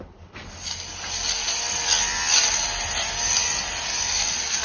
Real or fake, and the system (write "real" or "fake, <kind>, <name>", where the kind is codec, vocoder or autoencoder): real